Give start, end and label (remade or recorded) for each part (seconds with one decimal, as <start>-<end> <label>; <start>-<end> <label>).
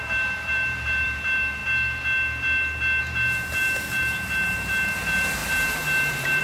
0.0-1.6 remade; 1.6-3.0 recorded; 3.0-6.4 remade